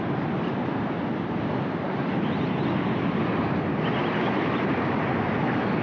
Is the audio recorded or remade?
recorded